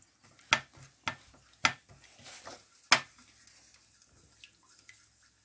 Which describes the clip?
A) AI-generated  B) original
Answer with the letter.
B